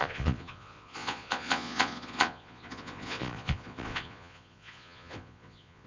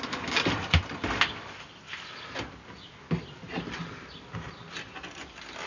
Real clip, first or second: second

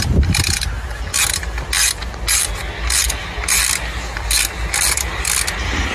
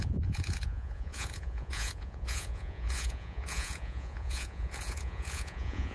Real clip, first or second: first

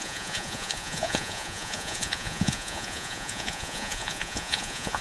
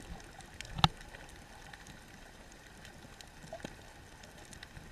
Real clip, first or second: second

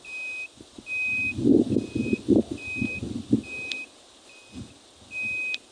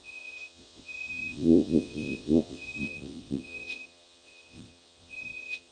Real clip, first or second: first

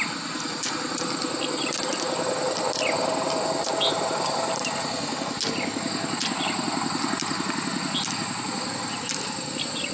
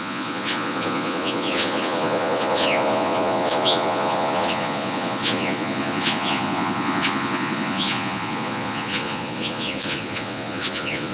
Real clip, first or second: first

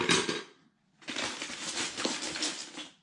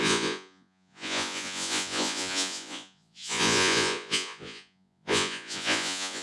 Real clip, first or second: first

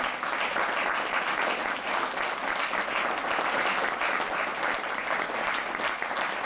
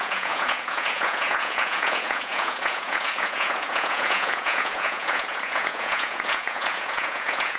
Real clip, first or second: first